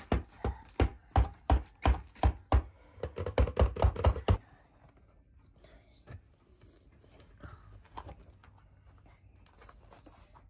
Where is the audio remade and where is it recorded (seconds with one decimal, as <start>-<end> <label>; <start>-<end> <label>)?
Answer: 0.0-10.5 recorded